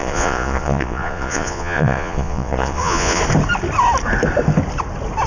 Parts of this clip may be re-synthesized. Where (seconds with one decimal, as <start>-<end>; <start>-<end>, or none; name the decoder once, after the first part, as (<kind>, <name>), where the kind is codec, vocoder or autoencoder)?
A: 0.0-3.2 (vocoder, Vocos)